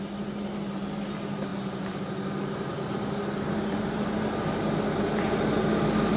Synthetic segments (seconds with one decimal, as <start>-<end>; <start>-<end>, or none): none

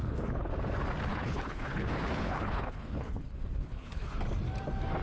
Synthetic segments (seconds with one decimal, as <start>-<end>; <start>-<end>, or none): 0.0-0.5; 1.1-4.1

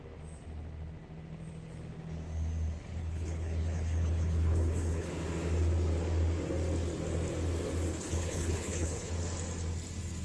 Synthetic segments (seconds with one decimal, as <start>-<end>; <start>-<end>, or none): 3.0-5.1; 7.9-9.1

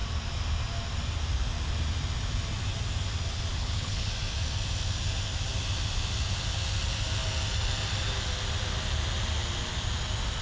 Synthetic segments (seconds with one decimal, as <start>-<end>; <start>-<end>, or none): 3.5-4.1